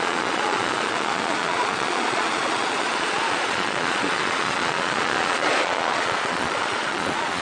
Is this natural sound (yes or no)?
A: no